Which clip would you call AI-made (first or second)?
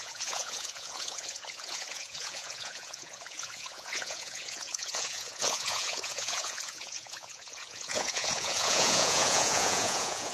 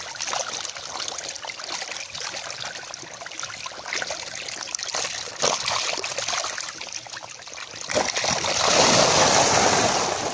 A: first